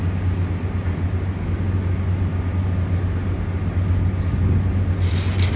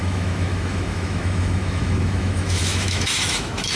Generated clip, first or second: second